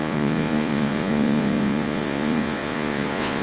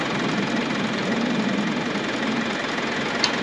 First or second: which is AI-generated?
first